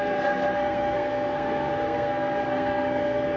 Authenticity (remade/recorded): remade